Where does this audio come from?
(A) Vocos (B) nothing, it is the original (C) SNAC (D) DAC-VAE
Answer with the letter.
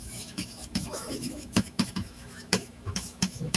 D